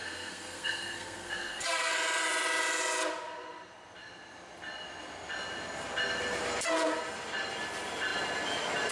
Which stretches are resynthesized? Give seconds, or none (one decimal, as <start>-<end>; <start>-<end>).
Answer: 0.0-1.9